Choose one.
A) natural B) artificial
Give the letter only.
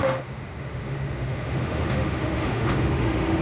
B